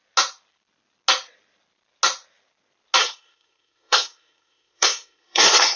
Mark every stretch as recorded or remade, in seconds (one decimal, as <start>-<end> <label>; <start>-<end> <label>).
0.0-3.0 recorded; 3.0-5.8 remade